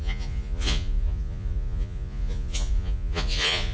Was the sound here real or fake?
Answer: fake